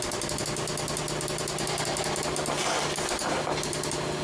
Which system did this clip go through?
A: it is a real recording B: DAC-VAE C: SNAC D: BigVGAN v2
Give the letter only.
A